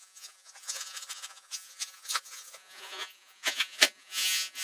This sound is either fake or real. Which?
fake